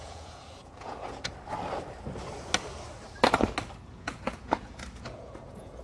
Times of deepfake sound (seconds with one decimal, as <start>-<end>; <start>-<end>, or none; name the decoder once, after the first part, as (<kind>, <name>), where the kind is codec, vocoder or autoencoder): 0.0-1.3 (vocoder, Vocos); 3.9-5.8